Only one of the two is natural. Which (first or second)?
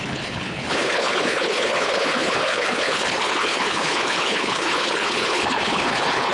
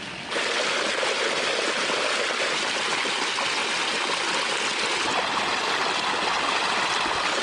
second